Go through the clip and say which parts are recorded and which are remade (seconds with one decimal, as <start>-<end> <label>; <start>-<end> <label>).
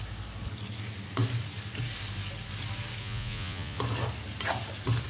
0.0-3.0 recorded; 3.0-3.8 remade; 3.8-5.1 recorded